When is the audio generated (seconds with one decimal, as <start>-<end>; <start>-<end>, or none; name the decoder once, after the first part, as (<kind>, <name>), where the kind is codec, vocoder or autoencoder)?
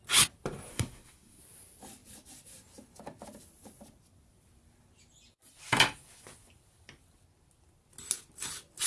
0.7-1.4 (codec, SNAC)